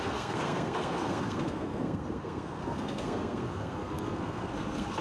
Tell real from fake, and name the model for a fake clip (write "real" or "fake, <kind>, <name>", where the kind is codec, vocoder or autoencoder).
fake, codec, SNAC